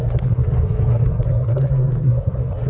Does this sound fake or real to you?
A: fake